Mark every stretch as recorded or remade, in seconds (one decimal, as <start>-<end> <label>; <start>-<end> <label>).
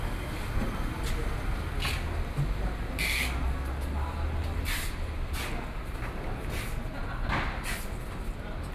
0.0-8.7 recorded